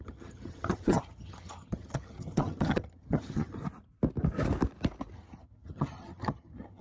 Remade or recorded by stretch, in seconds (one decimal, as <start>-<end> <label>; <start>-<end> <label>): 0.0-3.6 remade; 3.6-5.1 recorded; 5.1-6.8 remade